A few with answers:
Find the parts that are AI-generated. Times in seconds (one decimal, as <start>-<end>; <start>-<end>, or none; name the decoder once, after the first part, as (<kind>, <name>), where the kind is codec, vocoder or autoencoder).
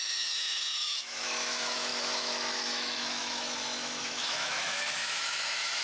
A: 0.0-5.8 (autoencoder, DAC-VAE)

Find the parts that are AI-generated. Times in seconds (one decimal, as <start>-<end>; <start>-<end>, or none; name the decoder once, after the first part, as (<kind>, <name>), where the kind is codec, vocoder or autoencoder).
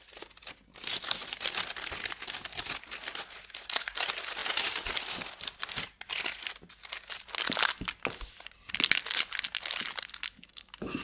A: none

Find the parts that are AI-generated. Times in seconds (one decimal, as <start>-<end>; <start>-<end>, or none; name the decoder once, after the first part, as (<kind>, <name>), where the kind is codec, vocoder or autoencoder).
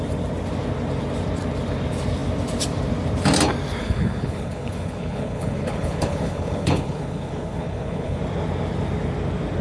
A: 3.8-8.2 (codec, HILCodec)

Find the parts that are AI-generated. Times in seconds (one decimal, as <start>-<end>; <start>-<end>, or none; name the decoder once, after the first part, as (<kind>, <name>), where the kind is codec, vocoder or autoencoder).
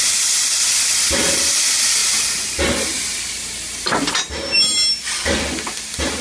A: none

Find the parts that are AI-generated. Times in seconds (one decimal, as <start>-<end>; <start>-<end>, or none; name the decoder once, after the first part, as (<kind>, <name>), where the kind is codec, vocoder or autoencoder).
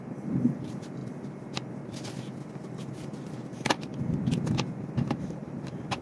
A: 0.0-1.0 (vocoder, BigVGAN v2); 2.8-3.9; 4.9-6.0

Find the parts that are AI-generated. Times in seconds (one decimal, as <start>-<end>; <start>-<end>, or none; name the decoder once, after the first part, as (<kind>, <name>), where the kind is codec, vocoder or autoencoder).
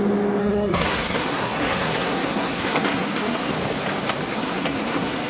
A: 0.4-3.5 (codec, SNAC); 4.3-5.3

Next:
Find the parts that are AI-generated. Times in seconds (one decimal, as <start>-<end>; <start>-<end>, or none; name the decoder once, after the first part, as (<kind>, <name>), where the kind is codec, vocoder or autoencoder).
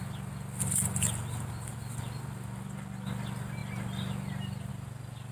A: none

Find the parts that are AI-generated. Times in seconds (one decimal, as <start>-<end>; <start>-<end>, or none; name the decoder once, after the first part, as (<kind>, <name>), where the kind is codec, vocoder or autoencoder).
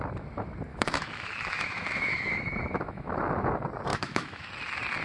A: 0.7-3.2 (autoencoder, DAC-VAE); 3.9-4.5